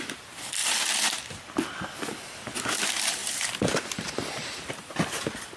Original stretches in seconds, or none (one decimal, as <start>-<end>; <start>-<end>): 0.0-5.6